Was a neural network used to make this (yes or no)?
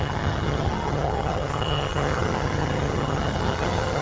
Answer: yes